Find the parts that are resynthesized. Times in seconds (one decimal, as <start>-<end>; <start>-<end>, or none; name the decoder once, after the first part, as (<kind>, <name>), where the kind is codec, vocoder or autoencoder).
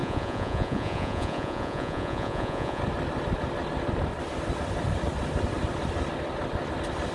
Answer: 0.0-2.8 (vocoder, Vocos)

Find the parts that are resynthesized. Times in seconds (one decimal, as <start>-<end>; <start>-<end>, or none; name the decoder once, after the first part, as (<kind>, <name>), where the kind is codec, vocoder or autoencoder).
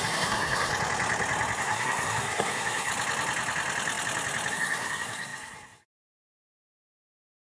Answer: 0.0-0.7 (codec, SNAC); 1.6-2.9; 4.5-7.6